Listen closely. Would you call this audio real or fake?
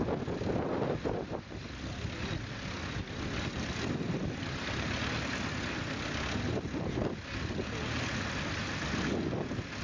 real